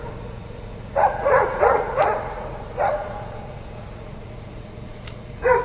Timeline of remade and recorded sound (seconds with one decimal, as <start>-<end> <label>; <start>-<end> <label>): 0.0-5.6 remade

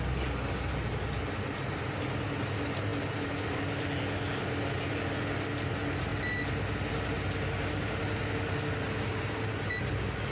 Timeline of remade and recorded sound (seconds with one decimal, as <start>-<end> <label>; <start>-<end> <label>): 0.0-10.3 recorded

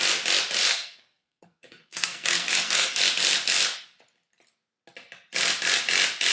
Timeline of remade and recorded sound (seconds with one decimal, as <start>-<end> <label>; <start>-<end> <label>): 0.0-0.7 recorded; 0.7-3.0 remade; 3.0-6.3 recorded

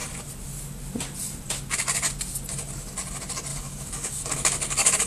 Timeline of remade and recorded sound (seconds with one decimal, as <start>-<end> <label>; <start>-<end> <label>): 0.0-3.5 recorded; 3.5-5.1 remade

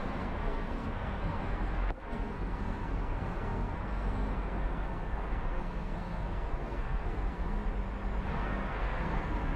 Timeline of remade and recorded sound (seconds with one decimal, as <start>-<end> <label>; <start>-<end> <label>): 0.0-7.6 remade; 7.6-8.3 recorded; 8.3-9.6 remade